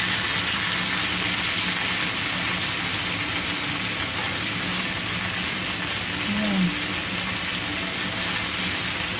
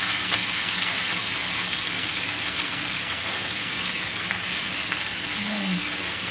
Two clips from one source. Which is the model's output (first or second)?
second